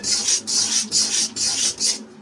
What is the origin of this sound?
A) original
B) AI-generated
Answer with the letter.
A